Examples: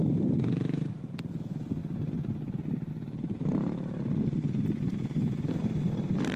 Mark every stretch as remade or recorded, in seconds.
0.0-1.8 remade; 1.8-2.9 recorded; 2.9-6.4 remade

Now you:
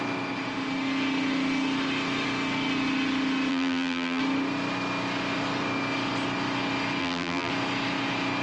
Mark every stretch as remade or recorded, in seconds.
0.0-3.5 recorded; 3.5-4.2 remade; 4.2-7.0 recorded; 7.0-7.5 remade; 7.5-8.4 recorded